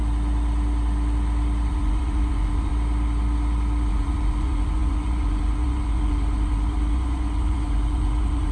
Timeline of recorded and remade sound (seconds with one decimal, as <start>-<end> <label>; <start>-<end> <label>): 0.0-1.7 recorded; 1.7-2.7 remade; 2.7-3.9 recorded; 3.9-8.5 remade